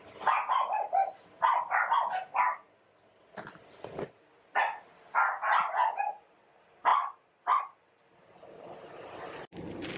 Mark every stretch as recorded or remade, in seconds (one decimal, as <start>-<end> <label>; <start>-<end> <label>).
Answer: 0.0-10.0 recorded